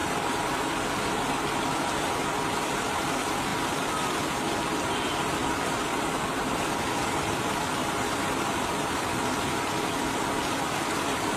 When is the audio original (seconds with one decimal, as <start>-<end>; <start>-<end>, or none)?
0.6-11.4